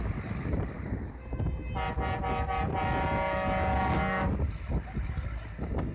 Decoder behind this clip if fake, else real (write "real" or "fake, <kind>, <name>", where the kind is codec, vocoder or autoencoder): real